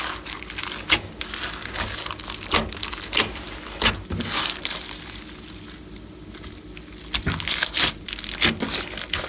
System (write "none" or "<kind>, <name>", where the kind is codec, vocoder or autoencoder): none